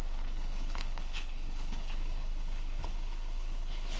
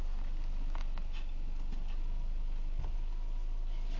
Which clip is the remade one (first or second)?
first